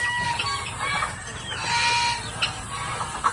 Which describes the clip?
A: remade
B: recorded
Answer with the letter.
B